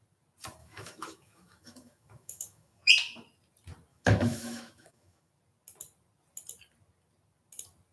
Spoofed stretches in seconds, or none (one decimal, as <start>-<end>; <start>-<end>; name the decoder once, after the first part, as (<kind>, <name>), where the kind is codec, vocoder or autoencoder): 0.6-2.9 (autoencoder, DAC-VAE); 3.9-5.3